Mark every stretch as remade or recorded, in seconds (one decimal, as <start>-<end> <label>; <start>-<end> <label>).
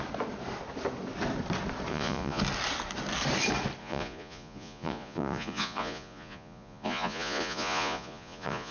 0.0-1.9 recorded; 1.9-2.4 remade; 2.4-3.8 recorded; 3.8-8.7 remade